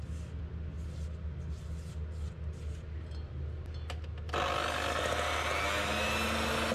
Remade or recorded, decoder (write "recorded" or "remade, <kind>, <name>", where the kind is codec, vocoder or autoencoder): recorded